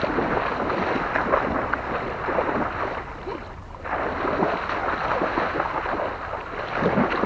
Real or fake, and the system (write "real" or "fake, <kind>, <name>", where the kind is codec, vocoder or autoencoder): real